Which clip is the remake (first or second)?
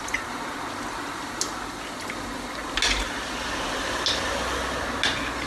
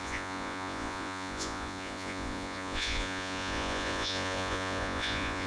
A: second